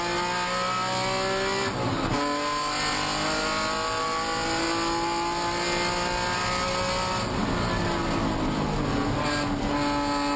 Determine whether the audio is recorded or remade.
recorded